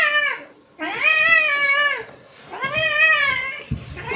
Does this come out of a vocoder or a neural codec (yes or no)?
no